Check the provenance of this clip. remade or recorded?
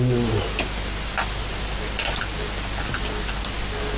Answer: recorded